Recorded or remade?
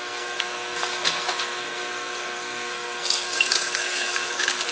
remade